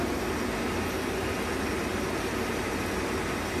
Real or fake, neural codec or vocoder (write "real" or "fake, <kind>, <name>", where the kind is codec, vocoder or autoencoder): real